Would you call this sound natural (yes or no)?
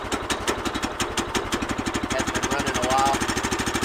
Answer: yes